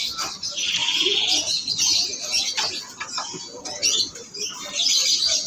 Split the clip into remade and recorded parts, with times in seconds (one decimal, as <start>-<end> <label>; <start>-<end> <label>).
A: 0.0-0.8 recorded; 0.8-4.1 remade; 4.1-5.5 recorded